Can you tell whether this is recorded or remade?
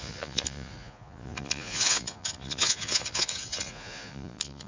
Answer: remade